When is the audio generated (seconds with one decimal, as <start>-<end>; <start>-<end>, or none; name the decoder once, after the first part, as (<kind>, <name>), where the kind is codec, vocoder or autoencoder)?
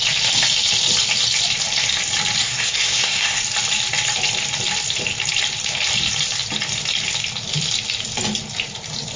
2.4-3.4 (codec, SNAC)